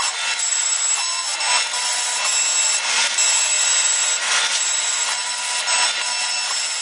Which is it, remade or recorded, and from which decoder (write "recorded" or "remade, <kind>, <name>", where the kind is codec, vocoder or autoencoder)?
recorded